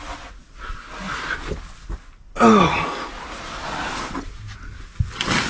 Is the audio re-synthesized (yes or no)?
no